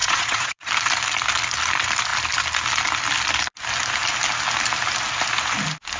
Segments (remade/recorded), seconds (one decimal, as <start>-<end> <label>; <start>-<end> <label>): 0.0-0.7 remade; 0.7-6.0 recorded